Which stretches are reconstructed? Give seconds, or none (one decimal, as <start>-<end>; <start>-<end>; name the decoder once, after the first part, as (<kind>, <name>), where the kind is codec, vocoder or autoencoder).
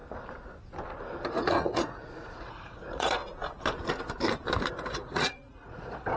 1.3-3.2 (vocoder, Vocos); 4.7-6.2